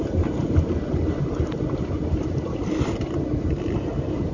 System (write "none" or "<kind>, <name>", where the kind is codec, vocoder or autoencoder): none